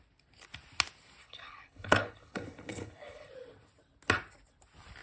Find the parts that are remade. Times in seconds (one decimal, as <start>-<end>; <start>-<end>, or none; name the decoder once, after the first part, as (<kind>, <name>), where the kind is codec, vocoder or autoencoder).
1.2-3.3 (codec, HILCodec)